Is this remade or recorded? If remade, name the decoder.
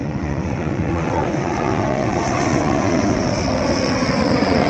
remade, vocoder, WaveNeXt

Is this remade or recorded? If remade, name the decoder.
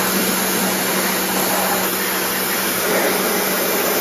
recorded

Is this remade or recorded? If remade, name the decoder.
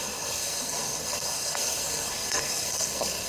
remade, codec, SNAC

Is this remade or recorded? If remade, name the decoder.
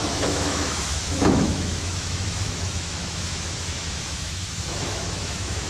remade, autoencoder, DAC-VAE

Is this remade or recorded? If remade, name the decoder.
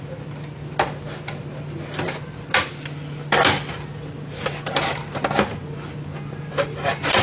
recorded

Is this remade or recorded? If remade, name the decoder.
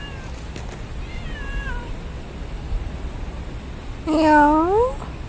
recorded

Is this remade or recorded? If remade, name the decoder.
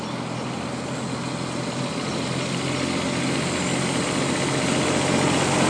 recorded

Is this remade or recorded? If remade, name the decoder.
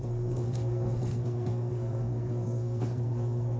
remade, codec, SNAC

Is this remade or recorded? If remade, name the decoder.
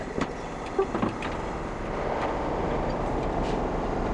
recorded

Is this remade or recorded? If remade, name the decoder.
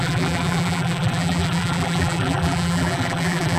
remade, vocoder, BigVGAN v2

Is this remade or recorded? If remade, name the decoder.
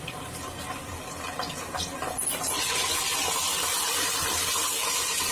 recorded